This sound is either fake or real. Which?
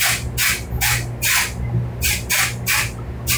real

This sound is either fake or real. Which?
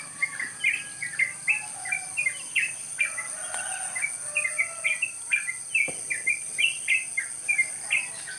real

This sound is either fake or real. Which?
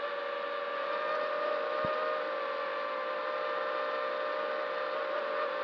real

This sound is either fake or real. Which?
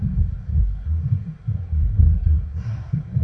fake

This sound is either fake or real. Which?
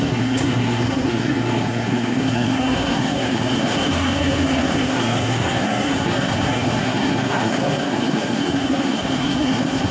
fake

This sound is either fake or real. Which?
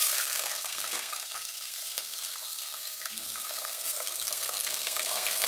fake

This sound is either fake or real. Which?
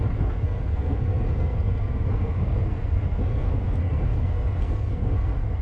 fake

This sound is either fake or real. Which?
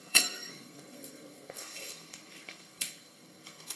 fake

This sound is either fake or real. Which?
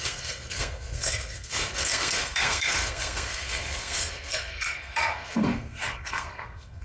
fake